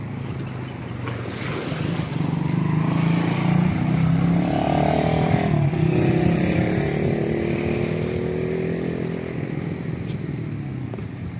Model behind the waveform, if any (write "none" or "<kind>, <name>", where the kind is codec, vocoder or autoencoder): none